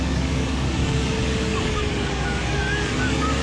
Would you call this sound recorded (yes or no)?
no